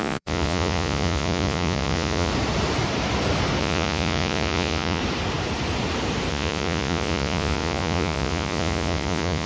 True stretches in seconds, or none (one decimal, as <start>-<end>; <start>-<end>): 2.3-3.6; 5.0-6.3